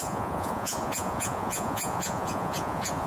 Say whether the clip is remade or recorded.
remade